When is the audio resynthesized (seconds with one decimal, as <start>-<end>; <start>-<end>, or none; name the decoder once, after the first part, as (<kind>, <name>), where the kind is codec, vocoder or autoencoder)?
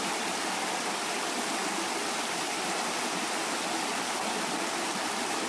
none